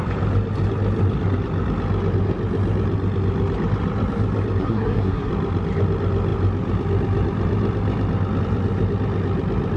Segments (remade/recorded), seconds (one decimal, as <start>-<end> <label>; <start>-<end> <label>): 0.0-4.6 recorded; 4.6-5.3 remade; 5.3-9.8 recorded